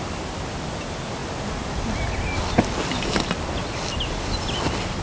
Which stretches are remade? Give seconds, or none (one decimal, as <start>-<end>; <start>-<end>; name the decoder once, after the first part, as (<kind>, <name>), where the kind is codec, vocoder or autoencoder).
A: none